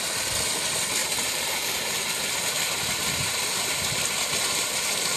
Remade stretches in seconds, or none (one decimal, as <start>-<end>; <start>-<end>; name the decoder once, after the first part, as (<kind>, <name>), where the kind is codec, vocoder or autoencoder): 1.0-3.9 (vocoder, BigVGAN v2)